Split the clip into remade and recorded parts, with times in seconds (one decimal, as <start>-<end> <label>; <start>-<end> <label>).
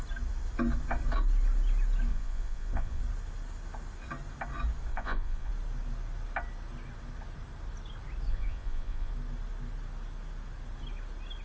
0.0-2.1 recorded; 2.1-3.0 remade; 3.0-4.9 recorded; 4.9-5.5 remade; 5.5-8.3 recorded; 8.3-9.1 remade; 9.1-11.4 recorded